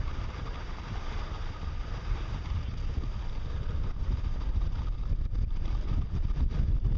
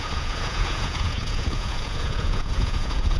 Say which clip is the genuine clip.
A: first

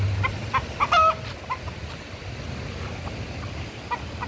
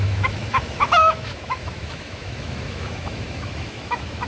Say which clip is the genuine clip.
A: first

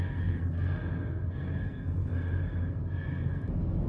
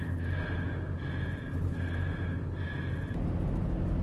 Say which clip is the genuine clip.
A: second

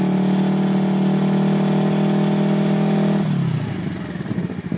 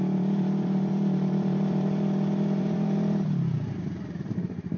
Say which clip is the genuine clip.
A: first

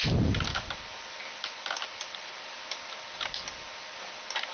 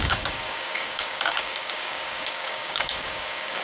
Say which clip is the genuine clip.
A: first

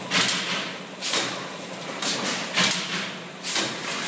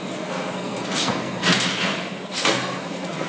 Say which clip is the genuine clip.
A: first